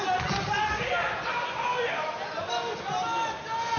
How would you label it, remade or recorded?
recorded